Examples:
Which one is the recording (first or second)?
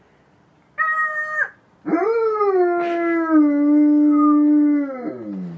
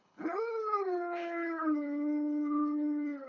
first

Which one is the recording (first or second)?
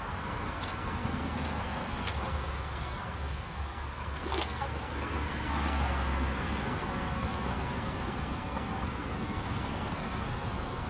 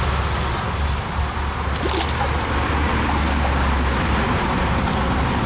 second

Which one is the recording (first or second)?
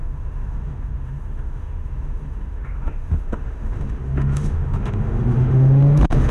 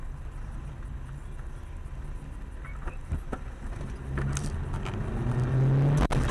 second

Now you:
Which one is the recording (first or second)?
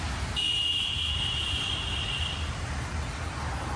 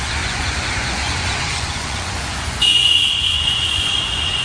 first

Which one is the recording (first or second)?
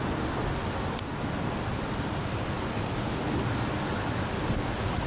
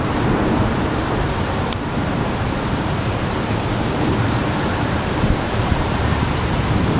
first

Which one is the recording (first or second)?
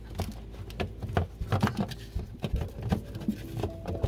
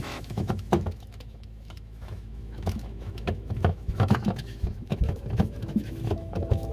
first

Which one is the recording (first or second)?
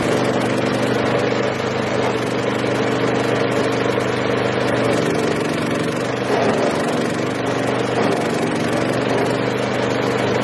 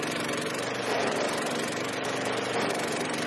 first